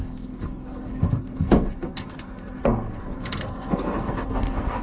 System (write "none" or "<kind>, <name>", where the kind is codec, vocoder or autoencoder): codec, SNAC